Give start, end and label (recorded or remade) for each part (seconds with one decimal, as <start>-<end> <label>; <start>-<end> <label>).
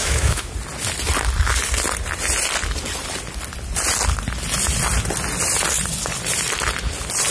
0.0-0.5 remade; 0.5-7.3 recorded